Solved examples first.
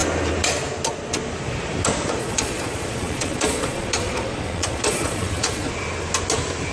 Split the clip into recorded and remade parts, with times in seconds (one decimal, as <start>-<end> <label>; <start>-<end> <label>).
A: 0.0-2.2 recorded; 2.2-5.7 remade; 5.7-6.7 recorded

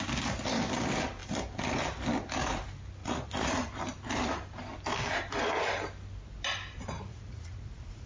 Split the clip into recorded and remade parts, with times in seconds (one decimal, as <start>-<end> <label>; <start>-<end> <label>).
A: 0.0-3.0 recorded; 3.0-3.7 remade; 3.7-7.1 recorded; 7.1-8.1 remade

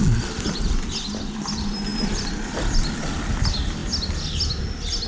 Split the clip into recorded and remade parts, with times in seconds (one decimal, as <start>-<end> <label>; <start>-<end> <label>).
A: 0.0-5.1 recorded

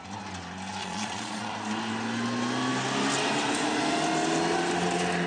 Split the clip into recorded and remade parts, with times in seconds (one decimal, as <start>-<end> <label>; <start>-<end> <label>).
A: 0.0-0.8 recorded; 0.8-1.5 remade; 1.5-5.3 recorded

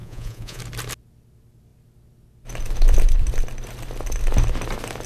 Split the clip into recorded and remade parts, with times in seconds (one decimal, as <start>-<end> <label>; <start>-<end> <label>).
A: 0.0-0.6 remade; 0.6-5.1 recorded

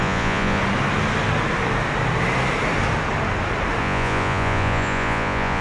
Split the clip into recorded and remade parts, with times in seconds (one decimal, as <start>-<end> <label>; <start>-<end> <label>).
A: 0.0-0.6 remade; 0.6-3.8 recorded; 3.8-5.6 remade